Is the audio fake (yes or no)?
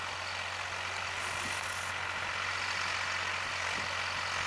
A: no